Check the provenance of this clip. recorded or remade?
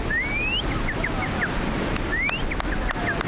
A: recorded